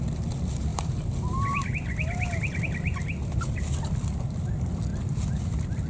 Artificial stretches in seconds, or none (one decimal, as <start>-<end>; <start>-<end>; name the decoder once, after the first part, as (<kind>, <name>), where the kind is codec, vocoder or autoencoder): 0.7-2.6 (vocoder, BigVGAN v2)